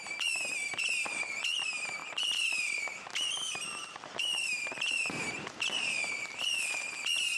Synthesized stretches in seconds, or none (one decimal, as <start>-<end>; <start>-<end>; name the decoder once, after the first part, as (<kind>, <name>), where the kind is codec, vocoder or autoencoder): 0.6-1.2 (vocoder, BigVGAN v2); 2.0-6.4